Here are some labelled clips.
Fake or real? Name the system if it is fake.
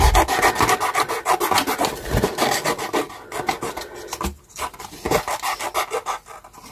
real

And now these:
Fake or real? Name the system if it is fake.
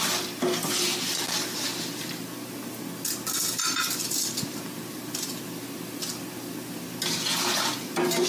real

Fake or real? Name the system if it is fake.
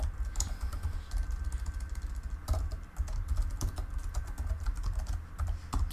real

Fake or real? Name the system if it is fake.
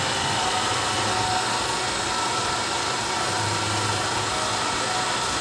real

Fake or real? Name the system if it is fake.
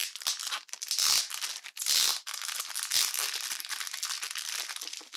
real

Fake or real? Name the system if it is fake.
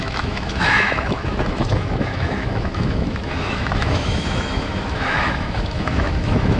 fake, autoencoder, DAC-VAE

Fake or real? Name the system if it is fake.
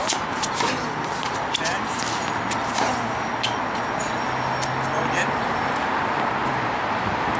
real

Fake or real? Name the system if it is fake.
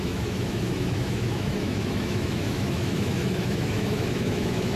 fake, autoencoder, DAC-VAE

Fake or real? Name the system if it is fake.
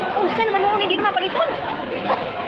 fake, autoencoder, DAC-VAE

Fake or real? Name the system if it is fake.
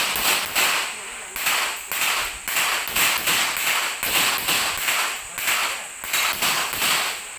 real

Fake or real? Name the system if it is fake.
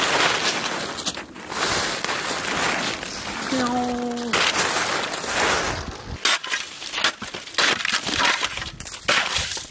real